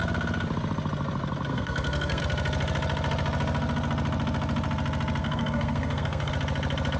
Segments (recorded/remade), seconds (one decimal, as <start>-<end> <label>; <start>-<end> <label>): 0.0-1.5 recorded; 1.5-2.2 remade; 2.2-5.2 recorded; 5.2-6.3 remade; 6.3-7.0 recorded